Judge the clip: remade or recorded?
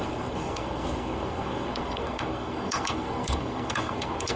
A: remade